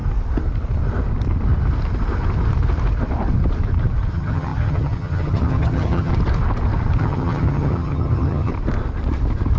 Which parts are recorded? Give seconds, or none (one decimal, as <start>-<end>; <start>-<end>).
0.0-4.1; 6.1-7.0; 8.5-9.6